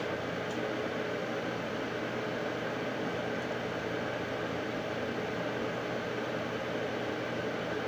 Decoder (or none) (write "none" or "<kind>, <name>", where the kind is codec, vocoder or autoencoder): none